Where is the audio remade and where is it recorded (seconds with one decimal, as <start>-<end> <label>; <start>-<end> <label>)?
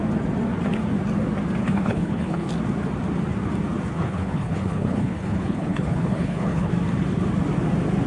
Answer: 0.0-1.6 recorded; 1.6-2.5 remade; 2.5-3.9 recorded; 3.9-6.7 remade; 6.7-8.1 recorded